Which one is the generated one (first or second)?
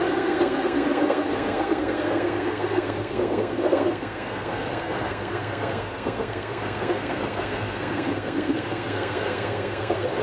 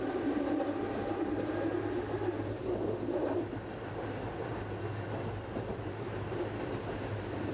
first